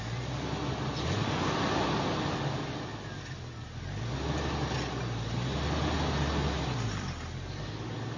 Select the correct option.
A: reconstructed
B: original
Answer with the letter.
B